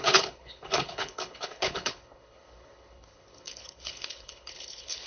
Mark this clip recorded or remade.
remade